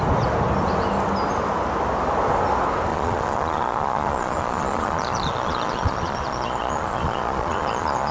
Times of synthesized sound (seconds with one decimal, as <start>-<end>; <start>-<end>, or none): 2.9-8.1